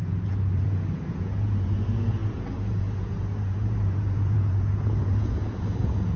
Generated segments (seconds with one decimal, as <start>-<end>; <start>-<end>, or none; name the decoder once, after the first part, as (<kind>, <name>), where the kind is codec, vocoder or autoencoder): 0.0-6.2 (vocoder, Vocos)